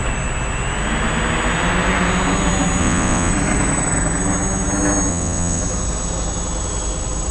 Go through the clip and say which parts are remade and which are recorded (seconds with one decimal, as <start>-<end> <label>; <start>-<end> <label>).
0.0-2.8 recorded; 2.8-3.3 remade; 3.3-5.1 recorded; 5.1-5.6 remade; 5.6-7.3 recorded